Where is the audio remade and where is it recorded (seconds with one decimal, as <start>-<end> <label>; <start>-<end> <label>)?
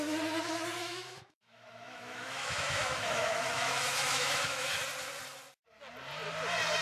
0.0-0.8 recorded; 0.8-4.8 remade; 4.8-6.8 recorded